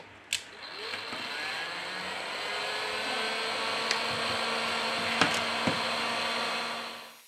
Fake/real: real